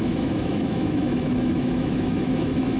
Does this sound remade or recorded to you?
remade